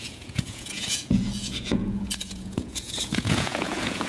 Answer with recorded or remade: remade